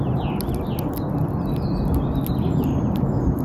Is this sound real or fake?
real